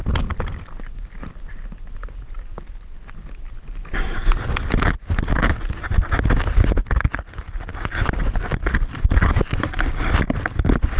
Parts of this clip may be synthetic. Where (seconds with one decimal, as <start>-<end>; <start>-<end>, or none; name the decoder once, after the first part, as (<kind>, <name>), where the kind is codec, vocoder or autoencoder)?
0.0-5.3 (vocoder, BigVGAN v2); 8.1-11.0